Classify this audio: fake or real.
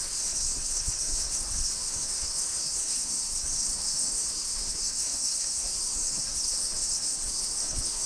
fake